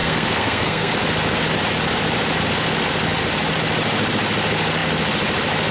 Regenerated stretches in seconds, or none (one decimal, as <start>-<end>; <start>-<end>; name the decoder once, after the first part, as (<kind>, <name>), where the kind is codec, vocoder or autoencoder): 0.0-0.9 (codec, SNAC)